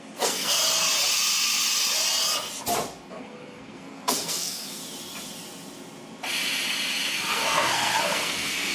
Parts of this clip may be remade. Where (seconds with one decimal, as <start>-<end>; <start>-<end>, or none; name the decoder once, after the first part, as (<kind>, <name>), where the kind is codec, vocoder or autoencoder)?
0.0-0.6 (codec, SNAC); 3.1-4.8; 7.1-8.7